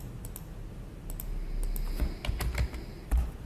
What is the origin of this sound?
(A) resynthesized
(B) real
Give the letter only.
B